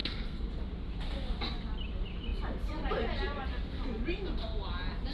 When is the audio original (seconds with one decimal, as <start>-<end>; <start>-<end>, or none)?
0.5-5.1